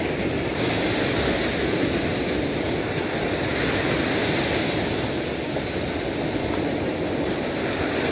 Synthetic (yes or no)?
no